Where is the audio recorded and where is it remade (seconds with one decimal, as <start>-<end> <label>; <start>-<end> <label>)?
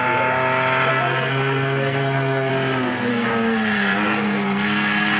0.0-0.9 recorded; 0.9-2.5 remade; 2.5-3.1 recorded; 3.1-5.2 remade